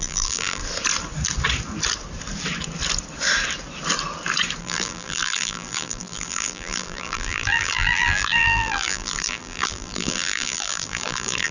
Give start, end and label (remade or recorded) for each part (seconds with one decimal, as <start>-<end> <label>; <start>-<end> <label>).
0.0-0.6 remade; 0.6-4.6 recorded; 4.6-11.5 remade